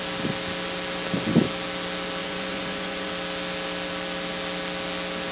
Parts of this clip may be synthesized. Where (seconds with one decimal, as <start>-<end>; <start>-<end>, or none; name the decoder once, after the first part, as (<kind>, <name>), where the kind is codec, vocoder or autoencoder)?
2.2-3.1 (vocoder, Vocos)